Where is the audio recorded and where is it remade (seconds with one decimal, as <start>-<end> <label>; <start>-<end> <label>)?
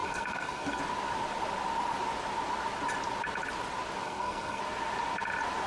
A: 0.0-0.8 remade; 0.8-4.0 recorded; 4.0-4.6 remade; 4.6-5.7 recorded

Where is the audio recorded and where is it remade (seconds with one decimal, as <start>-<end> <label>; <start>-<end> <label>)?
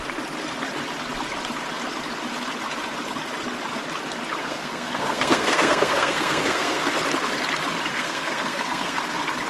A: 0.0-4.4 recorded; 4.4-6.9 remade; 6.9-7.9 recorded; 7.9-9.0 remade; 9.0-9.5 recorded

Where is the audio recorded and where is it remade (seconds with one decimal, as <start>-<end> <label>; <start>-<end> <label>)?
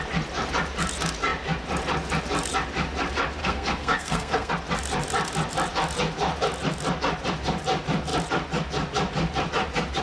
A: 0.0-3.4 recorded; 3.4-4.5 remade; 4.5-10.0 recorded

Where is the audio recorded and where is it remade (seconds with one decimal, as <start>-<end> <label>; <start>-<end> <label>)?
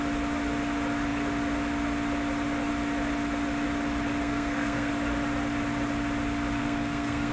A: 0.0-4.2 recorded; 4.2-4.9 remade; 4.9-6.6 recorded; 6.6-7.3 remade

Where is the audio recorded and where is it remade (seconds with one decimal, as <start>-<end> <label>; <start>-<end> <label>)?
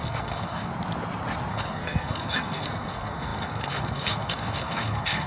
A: 0.0-0.7 remade; 0.7-1.5 recorded; 1.5-5.3 remade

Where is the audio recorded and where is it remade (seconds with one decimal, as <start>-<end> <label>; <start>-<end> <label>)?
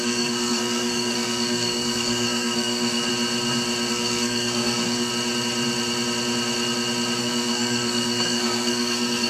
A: 0.0-3.1 remade; 3.1-3.9 recorded; 3.9-5.1 remade; 5.1-7.2 recorded; 7.2-9.3 remade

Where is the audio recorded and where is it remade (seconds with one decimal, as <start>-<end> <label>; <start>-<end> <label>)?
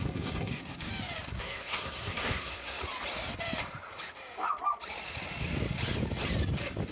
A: 0.0-0.9 remade; 0.9-1.4 recorded; 1.4-2.8 remade; 2.8-6.9 recorded